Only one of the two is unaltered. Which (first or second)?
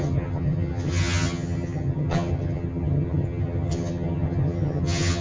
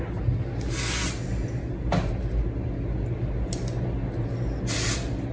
second